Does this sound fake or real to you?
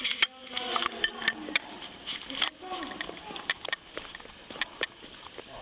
real